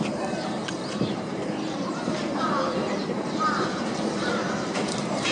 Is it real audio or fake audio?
fake